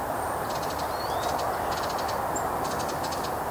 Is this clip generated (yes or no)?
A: no